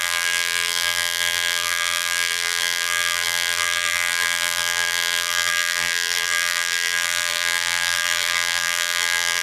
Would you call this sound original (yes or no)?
no